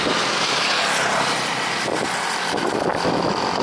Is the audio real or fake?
real